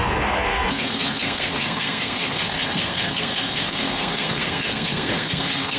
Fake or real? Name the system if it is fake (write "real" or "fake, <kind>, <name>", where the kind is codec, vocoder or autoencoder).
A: fake, codec, SNAC